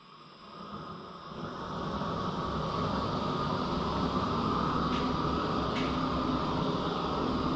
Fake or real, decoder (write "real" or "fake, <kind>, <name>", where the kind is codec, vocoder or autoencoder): real